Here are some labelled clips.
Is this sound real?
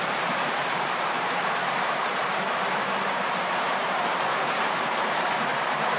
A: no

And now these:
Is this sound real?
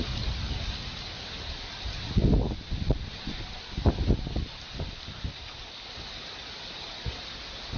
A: yes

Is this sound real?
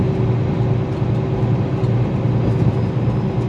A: yes